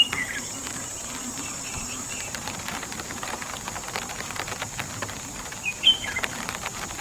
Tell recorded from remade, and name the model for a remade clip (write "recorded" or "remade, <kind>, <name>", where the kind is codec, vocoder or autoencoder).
remade, vocoder, BigVGAN v2